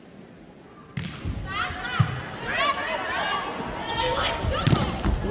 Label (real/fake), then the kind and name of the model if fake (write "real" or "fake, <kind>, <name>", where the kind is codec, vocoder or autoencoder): real